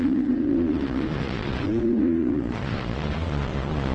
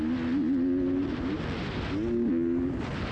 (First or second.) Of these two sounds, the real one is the second